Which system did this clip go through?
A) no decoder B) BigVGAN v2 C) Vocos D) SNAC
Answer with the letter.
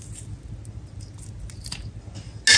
A